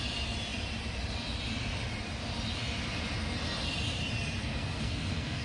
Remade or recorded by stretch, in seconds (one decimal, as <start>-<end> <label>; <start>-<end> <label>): 0.0-4.4 recorded; 4.4-5.4 remade